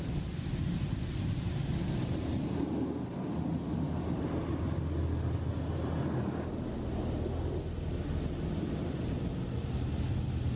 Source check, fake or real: real